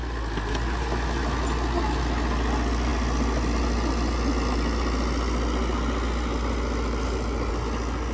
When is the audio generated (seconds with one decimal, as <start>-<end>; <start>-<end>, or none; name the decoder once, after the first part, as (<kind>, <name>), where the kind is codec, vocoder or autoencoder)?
none